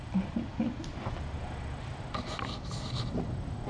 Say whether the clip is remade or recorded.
recorded